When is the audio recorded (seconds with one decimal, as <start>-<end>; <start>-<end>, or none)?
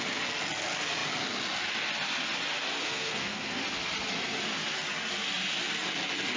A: 0.0-2.8; 3.6-6.4